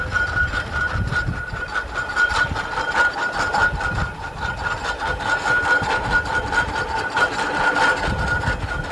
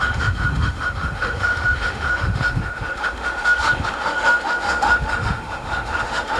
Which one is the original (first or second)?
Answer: first